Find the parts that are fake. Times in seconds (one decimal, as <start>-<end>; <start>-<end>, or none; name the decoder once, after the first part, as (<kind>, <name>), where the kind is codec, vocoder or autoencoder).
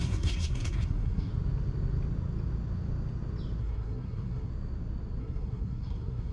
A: 0.0-1.3 (codec, SNAC); 3.6-4.5; 5.2-6.3